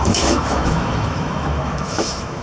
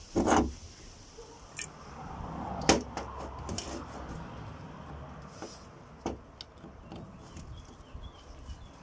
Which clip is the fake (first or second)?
first